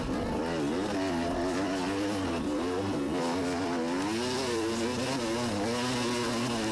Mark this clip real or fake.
real